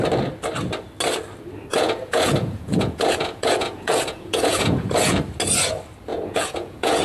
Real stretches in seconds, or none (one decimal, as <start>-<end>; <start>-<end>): 0.0-1.7; 5.2-6.1